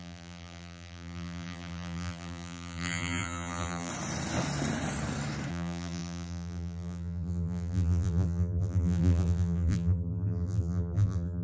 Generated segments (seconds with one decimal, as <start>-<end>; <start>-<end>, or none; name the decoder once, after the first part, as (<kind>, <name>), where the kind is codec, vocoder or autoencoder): 0.0-3.9 (vocoder, BigVGAN v2); 5.5-11.4